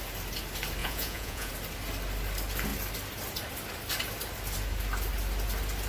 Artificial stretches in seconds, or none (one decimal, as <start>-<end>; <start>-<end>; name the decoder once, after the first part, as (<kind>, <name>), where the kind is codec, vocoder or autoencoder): 0.8-1.5 (vocoder, Vocos)